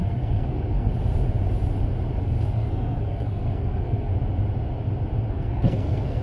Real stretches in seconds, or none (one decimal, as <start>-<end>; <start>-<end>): 0.9-2.2; 4.1-5.3